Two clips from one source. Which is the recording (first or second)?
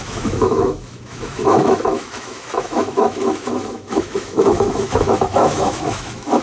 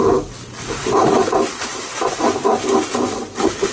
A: second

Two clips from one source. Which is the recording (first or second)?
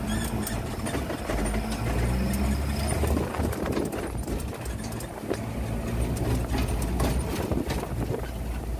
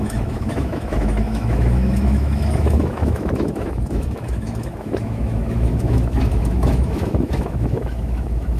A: first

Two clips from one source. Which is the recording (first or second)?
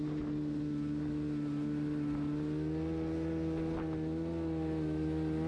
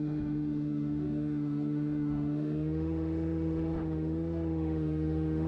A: first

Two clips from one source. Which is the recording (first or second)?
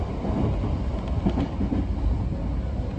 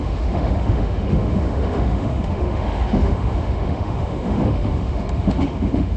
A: first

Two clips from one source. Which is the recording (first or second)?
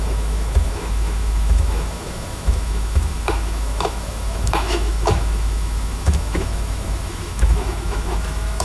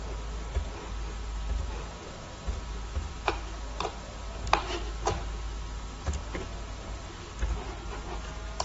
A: second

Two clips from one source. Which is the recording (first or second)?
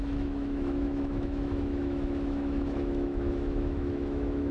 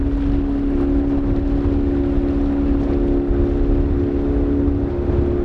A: second